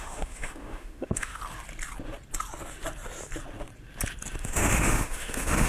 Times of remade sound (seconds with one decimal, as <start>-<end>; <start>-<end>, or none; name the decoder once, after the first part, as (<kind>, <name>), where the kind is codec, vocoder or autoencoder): 0.0-1.4 (autoencoder, DAC-VAE); 4.4-5.7